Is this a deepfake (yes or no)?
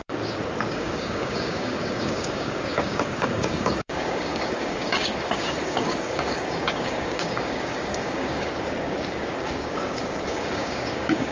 yes